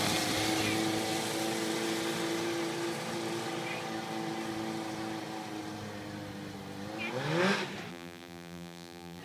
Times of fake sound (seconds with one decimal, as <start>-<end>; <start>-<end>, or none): 7.9-9.2